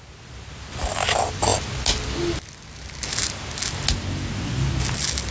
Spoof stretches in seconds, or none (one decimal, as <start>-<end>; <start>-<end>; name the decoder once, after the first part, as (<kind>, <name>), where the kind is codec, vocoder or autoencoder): none